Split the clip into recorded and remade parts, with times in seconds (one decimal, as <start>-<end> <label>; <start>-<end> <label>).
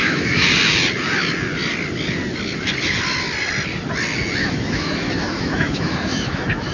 0.0-0.4 remade; 0.4-4.4 recorded; 4.4-6.7 remade